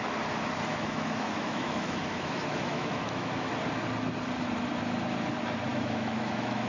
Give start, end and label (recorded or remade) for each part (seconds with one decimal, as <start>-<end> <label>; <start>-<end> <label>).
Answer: 0.0-0.7 recorded; 0.7-3.3 remade; 3.3-5.7 recorded; 5.7-6.7 remade